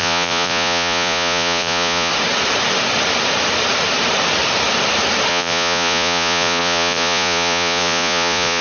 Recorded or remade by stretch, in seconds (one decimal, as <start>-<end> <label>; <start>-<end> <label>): 0.0-2.1 remade; 2.1-5.3 recorded; 5.3-8.6 remade